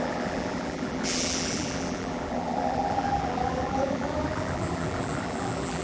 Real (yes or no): no